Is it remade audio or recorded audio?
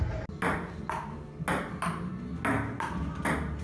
recorded